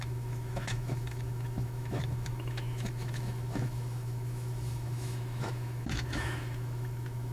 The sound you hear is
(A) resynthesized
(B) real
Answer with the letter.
A